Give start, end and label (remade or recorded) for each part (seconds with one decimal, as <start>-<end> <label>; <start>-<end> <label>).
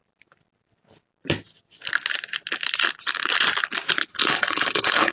0.0-4.1 recorded; 4.1-5.1 remade